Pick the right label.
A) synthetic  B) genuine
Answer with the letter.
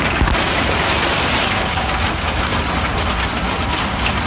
B